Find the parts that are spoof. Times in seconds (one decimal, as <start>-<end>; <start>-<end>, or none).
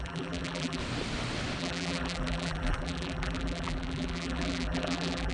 0.0-0.8; 1.6-5.3